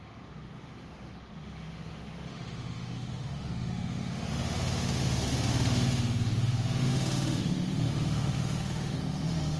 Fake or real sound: fake